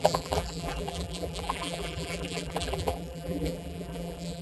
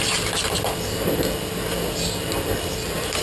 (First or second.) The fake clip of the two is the first